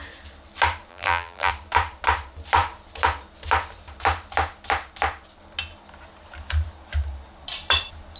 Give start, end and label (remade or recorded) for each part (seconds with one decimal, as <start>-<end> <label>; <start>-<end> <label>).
0.0-0.9 recorded; 0.9-1.5 remade; 1.5-8.2 recorded